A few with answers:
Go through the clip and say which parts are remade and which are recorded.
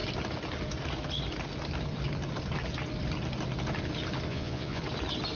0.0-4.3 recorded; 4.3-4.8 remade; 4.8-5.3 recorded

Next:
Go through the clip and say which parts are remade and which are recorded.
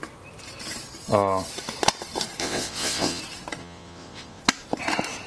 0.0-2.4 recorded; 2.4-3.2 remade; 3.2-3.6 recorded; 3.6-4.4 remade; 4.4-5.3 recorded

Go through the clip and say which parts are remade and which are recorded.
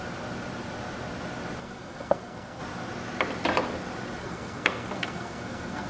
0.0-1.6 recorded; 1.6-2.6 remade; 2.6-4.2 recorded; 4.2-5.9 remade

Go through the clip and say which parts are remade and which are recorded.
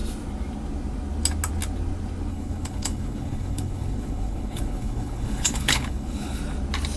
0.0-2.3 recorded; 2.3-6.4 remade; 6.4-7.0 recorded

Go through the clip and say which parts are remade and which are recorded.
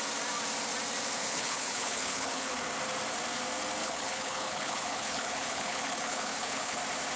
0.0-1.2 recorded; 1.2-2.5 remade; 2.5-3.8 recorded; 3.8-6.8 remade; 6.8-7.2 recorded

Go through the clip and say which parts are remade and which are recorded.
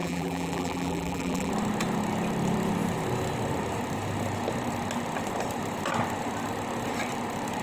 0.0-1.5 remade; 1.5-7.6 recorded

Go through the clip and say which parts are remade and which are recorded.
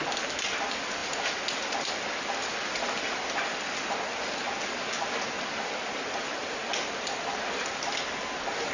0.0-8.7 recorded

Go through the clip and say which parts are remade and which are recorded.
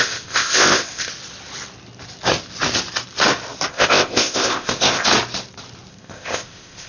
0.0-1.1 remade; 1.1-3.7 recorded; 3.7-5.1 remade; 5.1-5.9 recorded; 5.9-6.9 remade